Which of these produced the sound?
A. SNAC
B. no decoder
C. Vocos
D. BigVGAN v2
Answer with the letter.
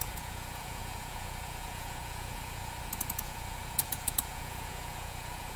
C